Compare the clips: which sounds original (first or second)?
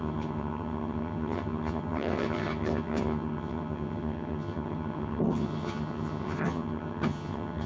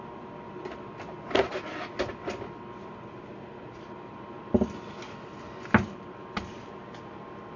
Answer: second